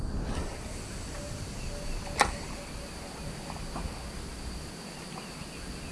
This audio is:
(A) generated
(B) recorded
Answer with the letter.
B